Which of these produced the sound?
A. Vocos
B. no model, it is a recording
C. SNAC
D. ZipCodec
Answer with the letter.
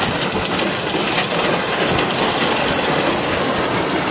B